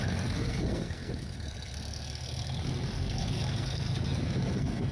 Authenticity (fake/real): fake